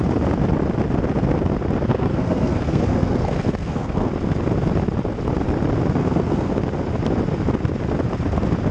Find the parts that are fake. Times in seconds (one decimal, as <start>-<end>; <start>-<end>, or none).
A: 1.9-4.1; 6.0-6.5